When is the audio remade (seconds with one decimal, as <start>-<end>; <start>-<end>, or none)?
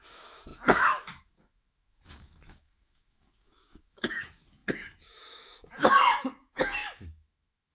0.0-7.7